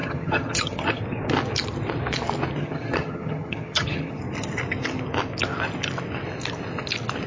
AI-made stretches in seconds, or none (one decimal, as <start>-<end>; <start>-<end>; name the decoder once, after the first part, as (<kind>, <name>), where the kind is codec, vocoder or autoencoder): 0.0-1.0 (vocoder, HiFi-GAN); 2.6-4.2